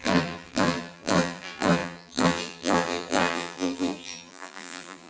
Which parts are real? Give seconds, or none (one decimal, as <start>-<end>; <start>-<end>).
none